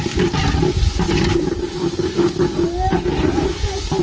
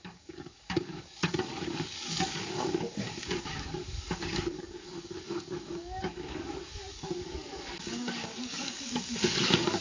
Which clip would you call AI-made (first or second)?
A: second